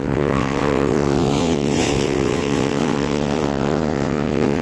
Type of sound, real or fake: fake